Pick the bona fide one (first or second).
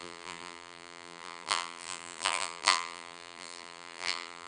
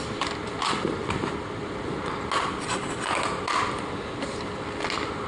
second